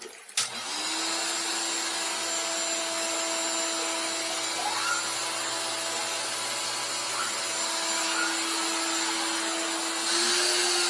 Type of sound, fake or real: real